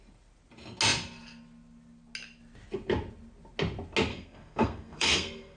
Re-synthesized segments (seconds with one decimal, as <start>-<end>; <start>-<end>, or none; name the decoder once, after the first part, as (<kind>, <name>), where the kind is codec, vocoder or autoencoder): 4.1-5.6 (codec, SNAC)

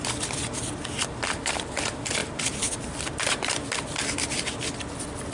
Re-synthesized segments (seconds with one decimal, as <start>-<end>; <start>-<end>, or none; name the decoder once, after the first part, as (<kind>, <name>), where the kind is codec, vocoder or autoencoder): 2.2-3.5 (vocoder, BigVGAN v2)

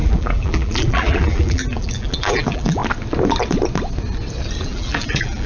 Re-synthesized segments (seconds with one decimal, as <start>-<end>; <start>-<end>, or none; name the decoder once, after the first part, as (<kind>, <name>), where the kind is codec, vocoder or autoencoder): 0.0-2.8 (vocoder, BigVGAN v2); 4.6-5.5

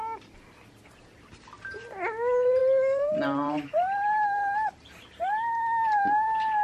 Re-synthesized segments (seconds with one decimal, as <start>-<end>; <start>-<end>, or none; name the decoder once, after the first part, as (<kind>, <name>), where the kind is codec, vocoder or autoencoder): 2.6-3.7 (vocoder, BigVGAN v2)

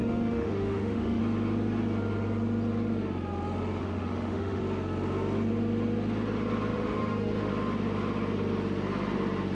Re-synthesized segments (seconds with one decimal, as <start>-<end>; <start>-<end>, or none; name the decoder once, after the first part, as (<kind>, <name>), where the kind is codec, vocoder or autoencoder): 0.0-1.2 (autoencoder, DAC-VAE); 3.8-4.6; 6.7-7.5